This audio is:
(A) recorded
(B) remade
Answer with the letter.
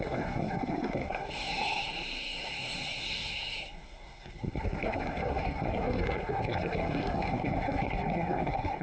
B